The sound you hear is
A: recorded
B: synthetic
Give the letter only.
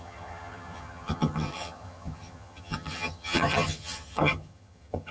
B